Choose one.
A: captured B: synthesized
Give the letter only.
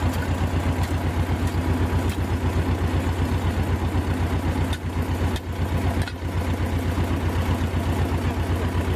A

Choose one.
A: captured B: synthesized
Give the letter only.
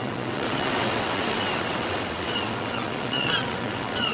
B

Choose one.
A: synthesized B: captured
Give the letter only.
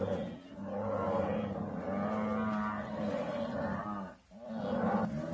B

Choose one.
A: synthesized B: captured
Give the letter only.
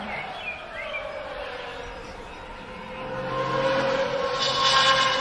B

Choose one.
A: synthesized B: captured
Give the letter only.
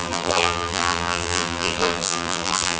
A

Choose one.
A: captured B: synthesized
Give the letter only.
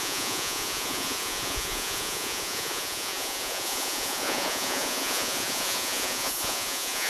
B